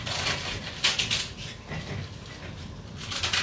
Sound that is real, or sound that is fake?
real